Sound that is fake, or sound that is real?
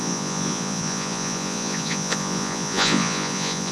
fake